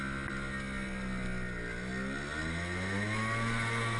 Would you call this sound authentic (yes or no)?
yes